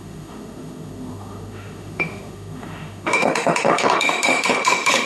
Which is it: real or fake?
fake